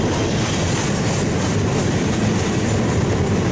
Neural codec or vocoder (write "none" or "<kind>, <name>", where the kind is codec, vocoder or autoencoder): none